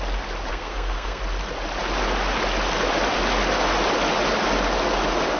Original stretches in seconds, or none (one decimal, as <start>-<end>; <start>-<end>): 0.0-0.5; 1.2-5.4